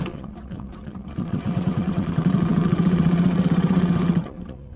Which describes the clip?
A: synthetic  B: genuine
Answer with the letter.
A